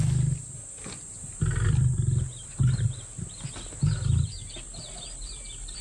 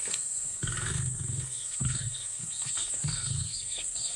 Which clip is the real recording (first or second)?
first